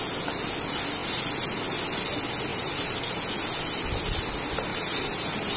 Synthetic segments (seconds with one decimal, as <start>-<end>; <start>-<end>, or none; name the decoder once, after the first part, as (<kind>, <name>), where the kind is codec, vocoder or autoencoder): 2.5-3.2 (vocoder, BigVGAN v2); 4.7-5.6